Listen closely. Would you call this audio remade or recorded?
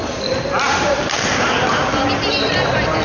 recorded